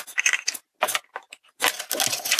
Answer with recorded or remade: recorded